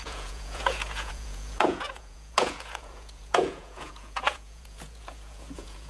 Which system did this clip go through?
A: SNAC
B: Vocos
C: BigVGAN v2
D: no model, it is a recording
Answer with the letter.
B